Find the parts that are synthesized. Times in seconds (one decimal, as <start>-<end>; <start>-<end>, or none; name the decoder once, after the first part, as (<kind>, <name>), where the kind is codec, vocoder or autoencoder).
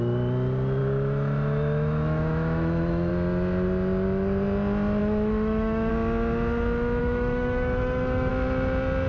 0.8-3.1 (autoencoder, DAC-VAE); 5.0-5.9; 7.0-8.3